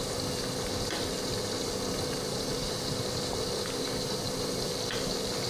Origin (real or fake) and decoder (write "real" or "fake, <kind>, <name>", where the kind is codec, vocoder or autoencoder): real